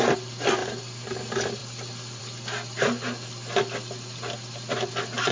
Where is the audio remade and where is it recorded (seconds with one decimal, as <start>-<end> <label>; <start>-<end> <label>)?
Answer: 0.0-5.3 recorded